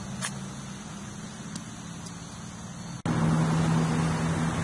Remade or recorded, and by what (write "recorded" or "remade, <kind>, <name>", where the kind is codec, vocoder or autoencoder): recorded